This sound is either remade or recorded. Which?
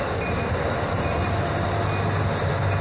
recorded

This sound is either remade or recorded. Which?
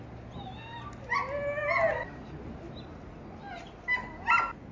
recorded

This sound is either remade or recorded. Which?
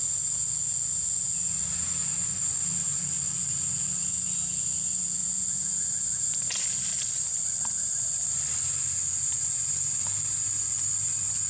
recorded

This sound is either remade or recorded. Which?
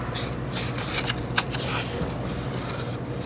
recorded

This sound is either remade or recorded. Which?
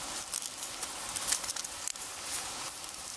recorded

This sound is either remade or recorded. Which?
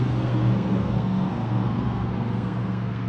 remade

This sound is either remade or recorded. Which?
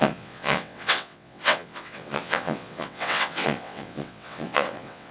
remade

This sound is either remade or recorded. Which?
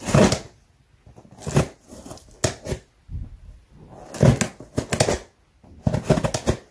recorded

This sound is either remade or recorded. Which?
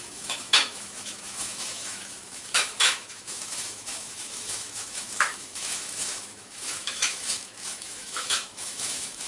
remade